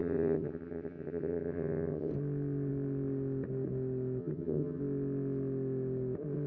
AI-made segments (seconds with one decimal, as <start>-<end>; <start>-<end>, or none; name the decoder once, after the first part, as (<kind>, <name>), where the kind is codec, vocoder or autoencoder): 0.0-2.1 (vocoder, HiFi-GAN); 4.2-4.8

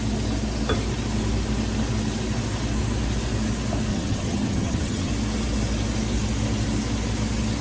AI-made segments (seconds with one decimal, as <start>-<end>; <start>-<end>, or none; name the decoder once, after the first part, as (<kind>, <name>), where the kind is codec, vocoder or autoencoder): 3.9-5.1 (vocoder, HiFi-GAN)

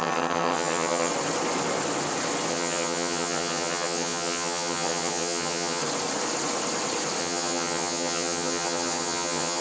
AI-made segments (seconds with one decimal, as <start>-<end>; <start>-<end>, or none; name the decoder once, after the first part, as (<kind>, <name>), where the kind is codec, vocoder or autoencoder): 0.0-1.1 (vocoder, HiFi-GAN); 2.5-5.8; 7.2-9.6

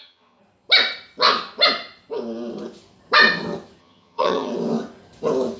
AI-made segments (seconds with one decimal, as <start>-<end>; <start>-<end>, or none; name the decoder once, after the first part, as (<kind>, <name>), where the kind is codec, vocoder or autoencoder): 0.0-0.4 (vocoder, HiFi-GAN); 3.8-4.5

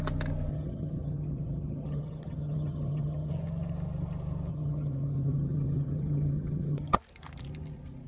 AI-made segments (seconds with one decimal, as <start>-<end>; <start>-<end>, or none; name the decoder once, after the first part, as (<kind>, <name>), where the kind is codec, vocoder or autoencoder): 0.5-3.3 (vocoder, HiFi-GAN); 4.5-7.0

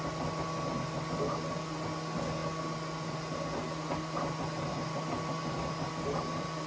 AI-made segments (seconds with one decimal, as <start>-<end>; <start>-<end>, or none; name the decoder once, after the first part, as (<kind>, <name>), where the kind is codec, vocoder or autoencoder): none